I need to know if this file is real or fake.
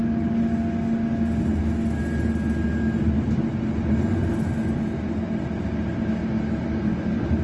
real